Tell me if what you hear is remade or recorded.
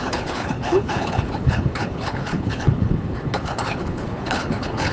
remade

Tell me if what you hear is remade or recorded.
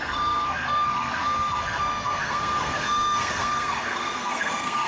remade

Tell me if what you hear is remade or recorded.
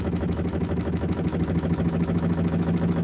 remade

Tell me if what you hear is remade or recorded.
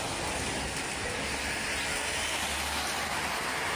recorded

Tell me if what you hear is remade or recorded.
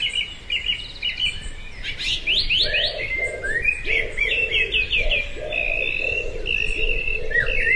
recorded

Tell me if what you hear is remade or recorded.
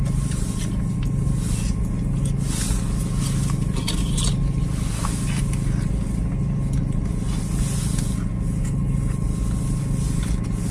recorded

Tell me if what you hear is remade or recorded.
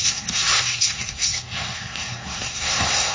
remade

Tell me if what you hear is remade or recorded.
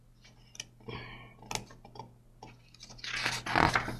recorded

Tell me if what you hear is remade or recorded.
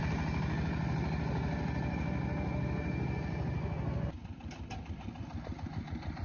recorded